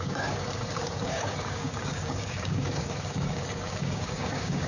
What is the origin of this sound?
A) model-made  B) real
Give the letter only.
A